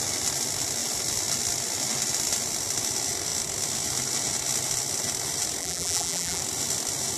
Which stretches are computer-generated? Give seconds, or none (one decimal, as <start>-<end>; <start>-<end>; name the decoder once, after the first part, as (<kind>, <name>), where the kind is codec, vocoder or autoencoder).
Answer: 5.6-6.4 (vocoder, BigVGAN v2)